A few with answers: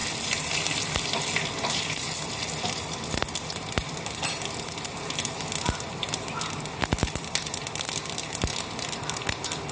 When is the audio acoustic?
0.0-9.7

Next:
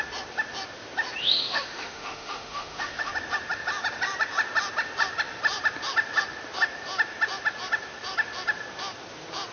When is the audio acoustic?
0.0-1.2; 3.1-9.5

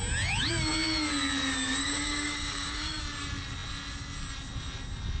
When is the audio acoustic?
0.0-1.8; 3.0-5.2

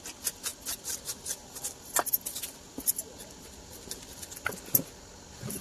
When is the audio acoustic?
0.0-5.6